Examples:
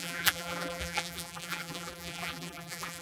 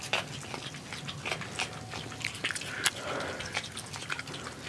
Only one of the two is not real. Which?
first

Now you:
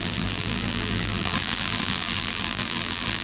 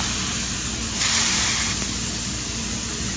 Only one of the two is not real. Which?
first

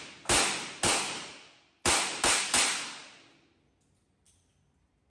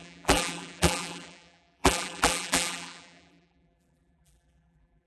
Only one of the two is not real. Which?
second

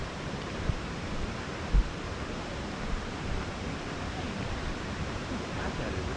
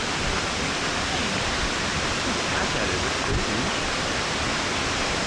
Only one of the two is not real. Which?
first